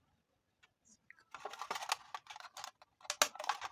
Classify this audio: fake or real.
real